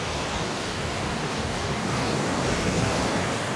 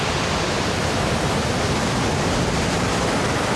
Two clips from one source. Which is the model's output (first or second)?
first